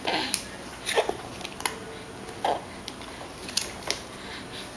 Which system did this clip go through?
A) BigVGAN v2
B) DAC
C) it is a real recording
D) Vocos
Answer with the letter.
C